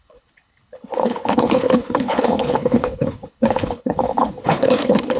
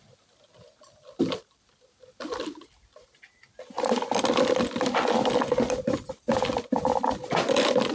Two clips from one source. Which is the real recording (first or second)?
second